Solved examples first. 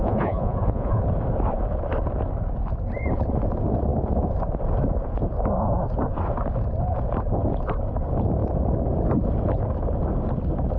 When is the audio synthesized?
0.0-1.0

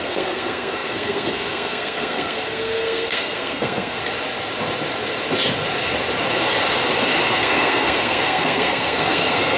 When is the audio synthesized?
0.0-4.0; 7.3-9.6

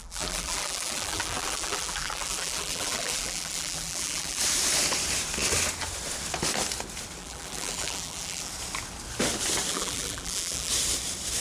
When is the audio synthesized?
0.0-4.4; 7.2-8.5; 9.7-10.7

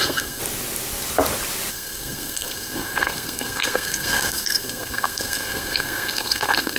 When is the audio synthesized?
0.0-0.4; 1.7-6.8

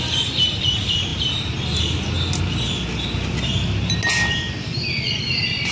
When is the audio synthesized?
none

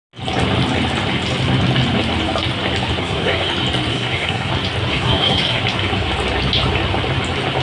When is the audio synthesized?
3.0-3.5; 3.9-4.5; 4.9-5.6